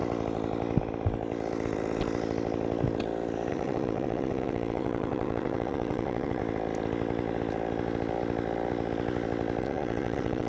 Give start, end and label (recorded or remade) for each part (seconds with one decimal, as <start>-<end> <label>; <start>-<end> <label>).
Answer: 0.0-3.5 recorded; 3.5-6.4 remade; 6.4-9.6 recorded; 9.6-10.5 remade